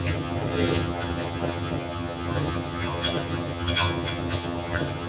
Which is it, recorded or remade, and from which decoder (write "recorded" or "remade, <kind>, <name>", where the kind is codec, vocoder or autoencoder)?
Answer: remade, vocoder, HiFi-GAN